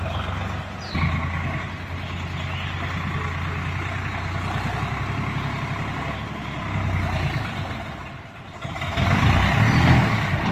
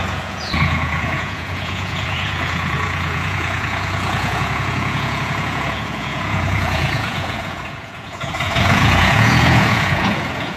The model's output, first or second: second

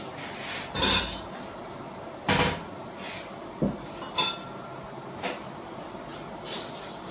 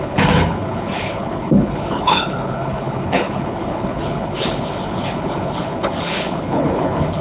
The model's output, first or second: second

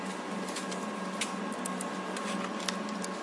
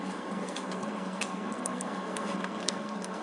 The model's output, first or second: second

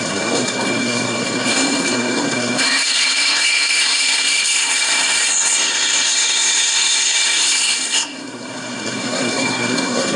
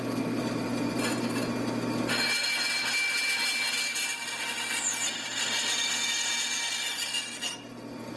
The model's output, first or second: first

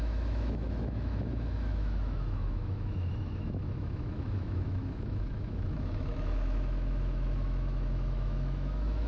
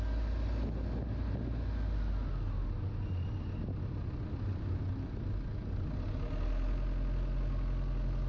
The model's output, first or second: first